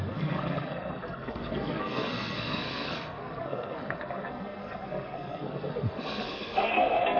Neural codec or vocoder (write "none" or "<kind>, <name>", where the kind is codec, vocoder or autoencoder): codec, SNAC